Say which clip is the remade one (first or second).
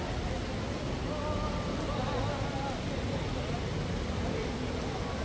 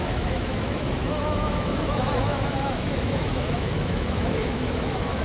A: second